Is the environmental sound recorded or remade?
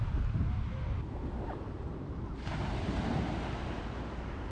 recorded